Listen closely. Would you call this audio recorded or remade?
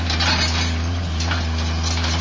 recorded